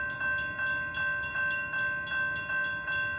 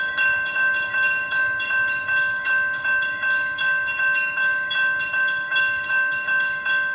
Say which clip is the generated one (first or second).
second